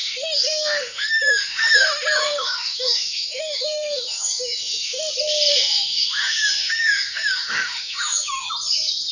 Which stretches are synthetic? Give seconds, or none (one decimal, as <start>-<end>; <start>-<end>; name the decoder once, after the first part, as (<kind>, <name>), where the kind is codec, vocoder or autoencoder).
0.0-5.1 (autoencoder, DAC-VAE); 5.5-8.5